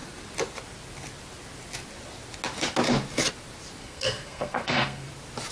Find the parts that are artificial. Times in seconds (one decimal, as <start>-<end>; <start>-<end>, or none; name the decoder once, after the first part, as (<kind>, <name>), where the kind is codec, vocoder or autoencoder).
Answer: 3.8-5.1 (codec, SNAC)